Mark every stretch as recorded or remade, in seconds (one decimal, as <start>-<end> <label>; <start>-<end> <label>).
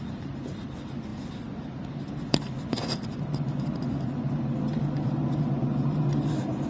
0.0-1.1 remade; 1.1-2.1 recorded; 2.1-6.7 remade